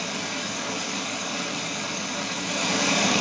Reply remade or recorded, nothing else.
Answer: remade